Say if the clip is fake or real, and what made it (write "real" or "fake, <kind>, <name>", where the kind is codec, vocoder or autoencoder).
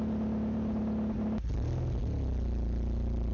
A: real